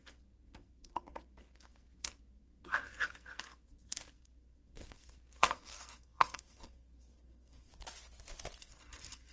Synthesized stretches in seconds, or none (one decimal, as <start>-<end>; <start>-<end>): 0.0-7.7; 8.6-9.3